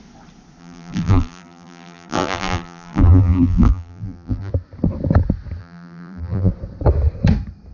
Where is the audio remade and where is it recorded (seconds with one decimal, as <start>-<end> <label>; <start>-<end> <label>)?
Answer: 0.0-0.6 recorded; 0.6-4.5 remade; 4.5-5.6 recorded; 5.6-6.5 remade; 6.5-7.7 recorded